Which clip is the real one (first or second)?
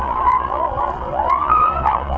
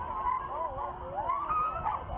second